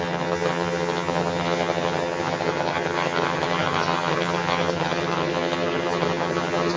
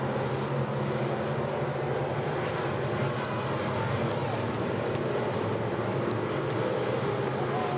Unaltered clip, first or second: second